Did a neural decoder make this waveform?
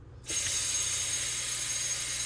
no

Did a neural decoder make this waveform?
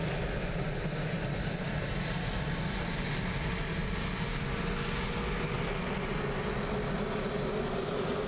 no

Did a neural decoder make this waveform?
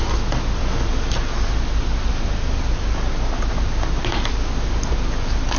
no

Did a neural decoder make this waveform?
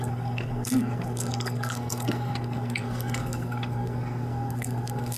yes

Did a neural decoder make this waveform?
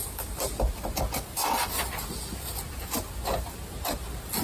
no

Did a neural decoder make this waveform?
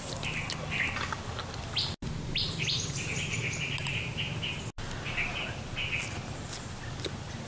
no